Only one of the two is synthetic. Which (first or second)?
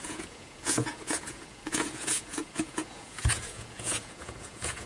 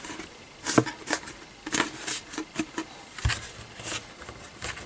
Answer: first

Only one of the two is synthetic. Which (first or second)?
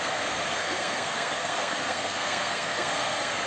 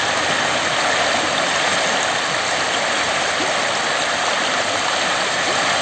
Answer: first